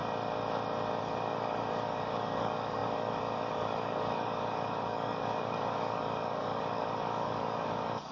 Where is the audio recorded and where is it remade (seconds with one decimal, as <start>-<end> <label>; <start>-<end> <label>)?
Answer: 0.0-1.0 recorded; 1.0-8.1 remade